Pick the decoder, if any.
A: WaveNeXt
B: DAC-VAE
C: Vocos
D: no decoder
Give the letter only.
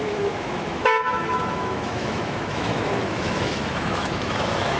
B